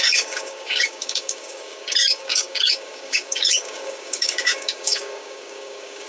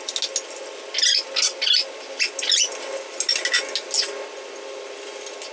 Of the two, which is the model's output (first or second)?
first